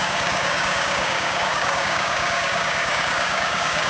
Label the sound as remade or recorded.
remade